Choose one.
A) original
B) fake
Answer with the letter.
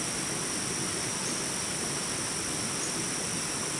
A